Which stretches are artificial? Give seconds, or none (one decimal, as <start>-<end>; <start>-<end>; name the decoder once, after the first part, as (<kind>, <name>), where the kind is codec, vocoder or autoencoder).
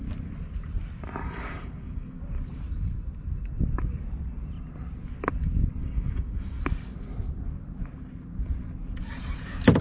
1.2-2.2 (codec, DAC); 5.8-6.6